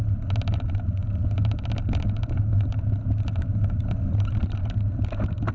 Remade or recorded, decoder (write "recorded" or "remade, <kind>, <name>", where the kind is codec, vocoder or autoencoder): recorded